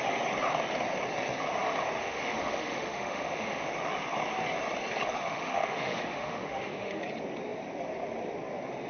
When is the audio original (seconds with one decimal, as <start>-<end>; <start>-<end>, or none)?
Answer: 0.0-2.0; 3.7-5.2; 7.0-8.9